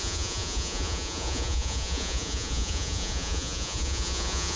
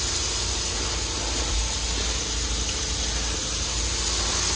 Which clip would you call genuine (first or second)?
second